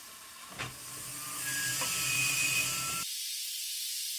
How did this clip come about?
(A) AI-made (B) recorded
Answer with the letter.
B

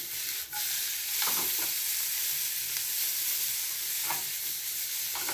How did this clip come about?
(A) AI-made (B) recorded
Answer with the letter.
B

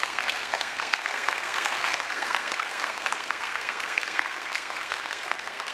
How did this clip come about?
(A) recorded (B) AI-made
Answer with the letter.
B